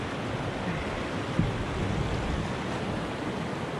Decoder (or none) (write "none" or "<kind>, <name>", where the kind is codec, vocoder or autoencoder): none